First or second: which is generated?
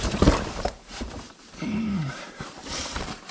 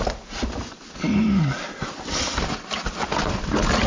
first